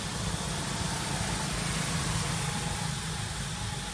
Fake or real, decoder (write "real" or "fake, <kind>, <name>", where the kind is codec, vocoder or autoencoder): real